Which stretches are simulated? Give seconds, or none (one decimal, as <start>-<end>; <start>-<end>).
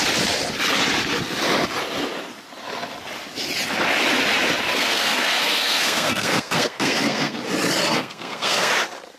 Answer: 4.7-7.4; 7.9-8.7